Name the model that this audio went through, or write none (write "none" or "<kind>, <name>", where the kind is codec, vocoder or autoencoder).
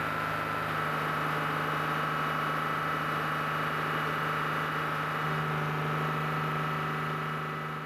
none